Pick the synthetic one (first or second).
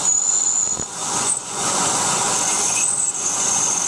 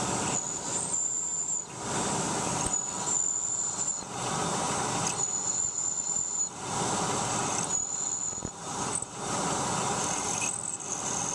first